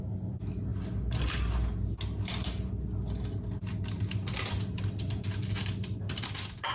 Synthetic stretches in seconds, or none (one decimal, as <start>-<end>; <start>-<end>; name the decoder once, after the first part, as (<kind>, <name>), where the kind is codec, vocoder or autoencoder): none